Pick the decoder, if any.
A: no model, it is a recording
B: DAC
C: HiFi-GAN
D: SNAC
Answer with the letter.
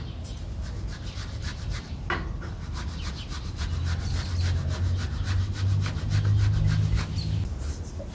A